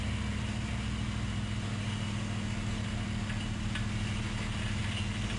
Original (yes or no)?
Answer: yes